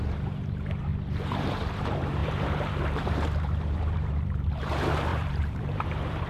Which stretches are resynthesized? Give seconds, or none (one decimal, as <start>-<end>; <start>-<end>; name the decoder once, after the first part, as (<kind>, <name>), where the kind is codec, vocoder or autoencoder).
0.0-0.9 (vocoder, BigVGAN v2); 1.5-6.3